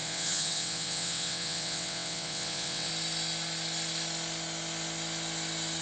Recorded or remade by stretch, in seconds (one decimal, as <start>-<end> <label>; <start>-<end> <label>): 0.0-2.9 remade; 2.9-5.8 recorded